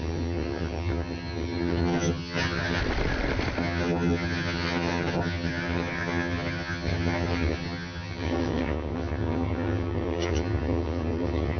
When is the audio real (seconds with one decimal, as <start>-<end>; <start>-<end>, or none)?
2.8-3.6